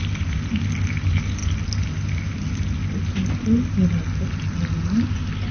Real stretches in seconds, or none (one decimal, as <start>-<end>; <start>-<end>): 0.0-5.5